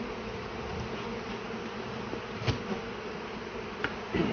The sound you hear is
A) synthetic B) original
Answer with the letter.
B